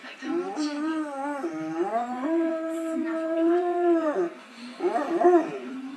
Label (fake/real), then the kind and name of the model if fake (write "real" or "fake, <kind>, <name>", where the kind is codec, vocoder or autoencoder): fake, vocoder, Vocos